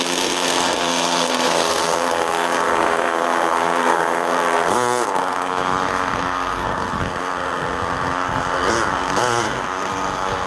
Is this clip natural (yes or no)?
no